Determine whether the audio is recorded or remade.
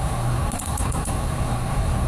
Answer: remade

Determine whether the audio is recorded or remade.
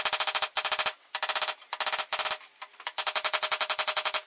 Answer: recorded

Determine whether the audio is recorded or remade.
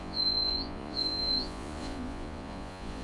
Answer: remade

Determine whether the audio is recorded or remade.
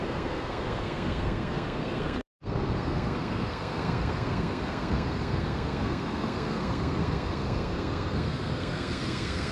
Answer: remade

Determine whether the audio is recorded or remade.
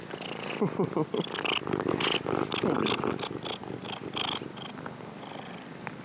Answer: recorded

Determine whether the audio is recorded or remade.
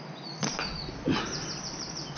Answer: recorded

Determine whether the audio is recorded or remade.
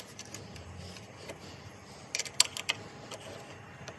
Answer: recorded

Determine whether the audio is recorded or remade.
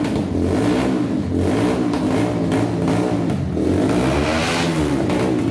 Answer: recorded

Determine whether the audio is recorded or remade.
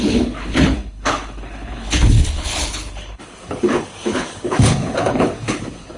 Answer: remade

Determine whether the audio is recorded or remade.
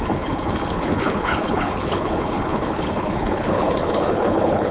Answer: remade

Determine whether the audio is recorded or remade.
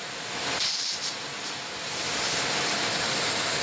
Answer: recorded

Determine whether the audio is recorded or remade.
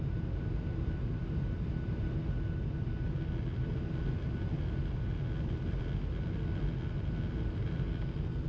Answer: recorded